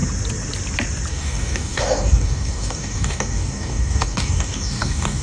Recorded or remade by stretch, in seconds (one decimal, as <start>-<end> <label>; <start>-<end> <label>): 0.0-1.1 recorded; 1.1-5.2 remade

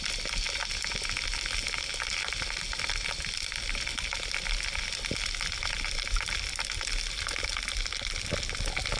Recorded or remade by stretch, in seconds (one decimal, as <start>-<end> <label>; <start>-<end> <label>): 0.0-9.0 recorded

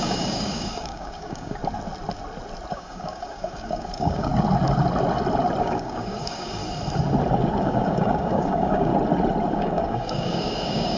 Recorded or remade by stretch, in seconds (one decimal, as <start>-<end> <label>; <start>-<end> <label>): 0.0-1.6 remade; 1.6-2.7 recorded; 2.7-4.3 remade; 4.3-5.6 recorded; 5.6-6.6 remade; 6.6-7.6 recorded; 7.6-8.9 remade; 8.9-9.5 recorded; 9.5-11.0 remade